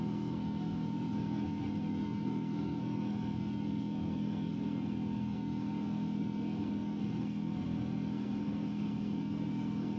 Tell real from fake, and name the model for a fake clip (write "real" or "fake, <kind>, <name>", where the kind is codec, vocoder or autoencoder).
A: fake, codec, SNAC